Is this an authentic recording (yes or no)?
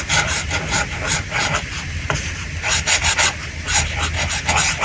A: yes